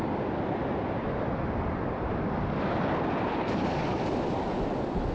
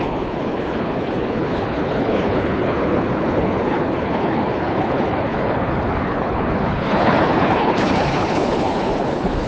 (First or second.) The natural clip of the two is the first